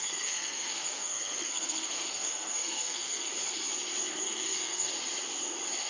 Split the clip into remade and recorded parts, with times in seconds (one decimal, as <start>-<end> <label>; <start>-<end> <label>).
0.0-3.3 remade; 3.3-4.1 recorded; 4.1-4.9 remade; 4.9-5.9 recorded